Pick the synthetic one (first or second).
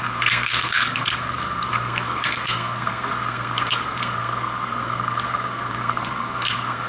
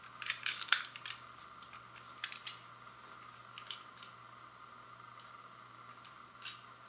first